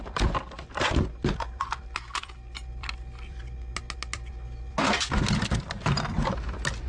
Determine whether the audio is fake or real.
real